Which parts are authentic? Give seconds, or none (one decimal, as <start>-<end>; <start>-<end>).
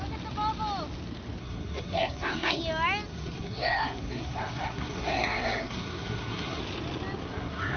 0.0-1.4; 2.6-3.1; 6.6-7.2